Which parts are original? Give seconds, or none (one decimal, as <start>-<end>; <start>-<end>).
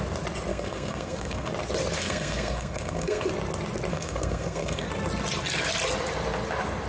0.0-0.5; 1.5-2.0; 3.3-3.9; 4.9-6.9